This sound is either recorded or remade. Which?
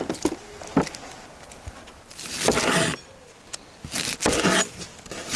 recorded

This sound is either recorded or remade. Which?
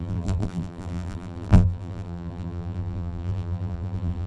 remade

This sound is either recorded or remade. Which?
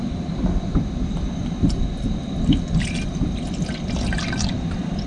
recorded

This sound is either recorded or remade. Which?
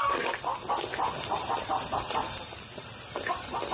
recorded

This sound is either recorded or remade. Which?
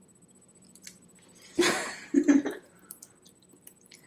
remade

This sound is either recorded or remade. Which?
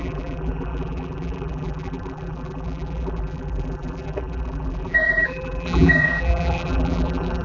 remade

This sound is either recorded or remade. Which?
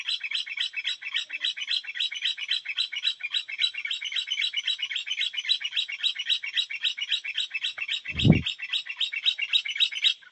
recorded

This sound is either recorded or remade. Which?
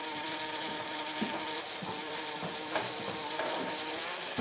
remade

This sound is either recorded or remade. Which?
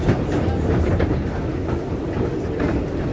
recorded